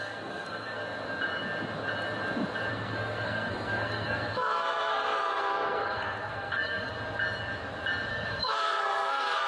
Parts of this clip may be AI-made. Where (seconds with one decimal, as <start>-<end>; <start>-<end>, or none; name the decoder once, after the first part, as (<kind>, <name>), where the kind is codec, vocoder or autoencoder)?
0.0-0.8 (codec, SNAC); 2.7-6.9; 8.1-9.5